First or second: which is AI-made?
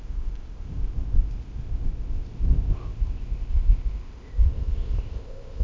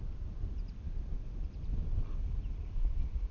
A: first